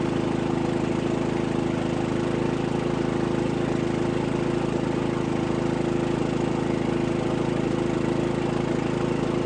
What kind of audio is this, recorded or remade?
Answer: recorded